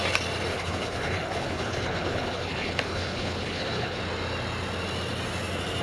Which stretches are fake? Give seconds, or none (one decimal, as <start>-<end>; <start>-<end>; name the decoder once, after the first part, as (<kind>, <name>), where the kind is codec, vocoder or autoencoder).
0.5-4.0 (codec, HILCodec)